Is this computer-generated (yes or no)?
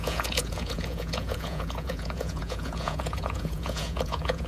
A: yes